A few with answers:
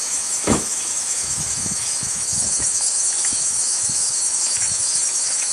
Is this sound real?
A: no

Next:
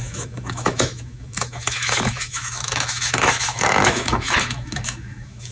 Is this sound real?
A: no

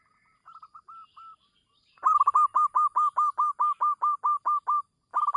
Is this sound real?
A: yes